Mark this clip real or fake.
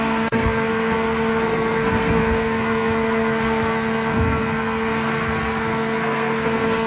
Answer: fake